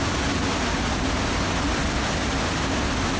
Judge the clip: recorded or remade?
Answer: recorded